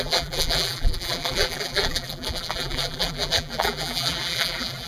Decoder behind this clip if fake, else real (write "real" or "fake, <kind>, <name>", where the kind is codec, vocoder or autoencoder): fake, vocoder, BigVGAN v2